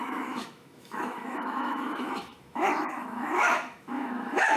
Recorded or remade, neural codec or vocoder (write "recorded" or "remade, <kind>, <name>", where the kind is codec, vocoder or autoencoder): remade, autoencoder, DAC-VAE